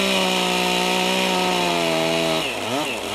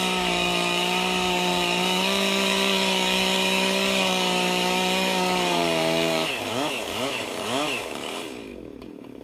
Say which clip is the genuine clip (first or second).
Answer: first